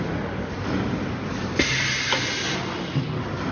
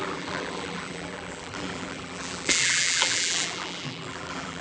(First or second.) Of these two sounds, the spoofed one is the second